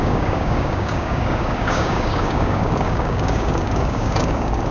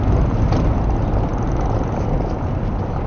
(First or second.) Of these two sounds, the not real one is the first